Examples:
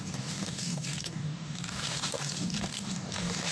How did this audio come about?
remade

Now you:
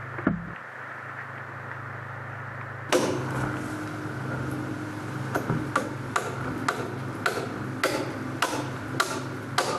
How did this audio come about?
recorded